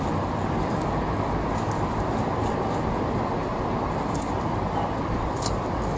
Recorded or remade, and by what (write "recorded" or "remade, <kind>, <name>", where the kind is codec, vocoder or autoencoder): recorded